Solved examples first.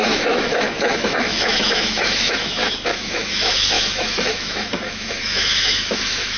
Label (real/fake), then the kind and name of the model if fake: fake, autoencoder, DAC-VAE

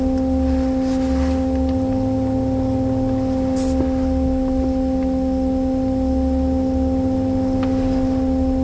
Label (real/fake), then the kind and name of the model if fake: real